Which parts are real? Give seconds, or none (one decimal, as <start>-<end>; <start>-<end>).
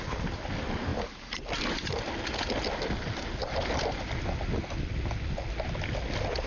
0.0-6.5